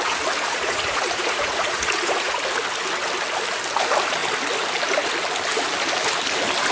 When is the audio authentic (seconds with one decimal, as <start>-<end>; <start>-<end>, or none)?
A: 0.0-0.5; 2.3-6.7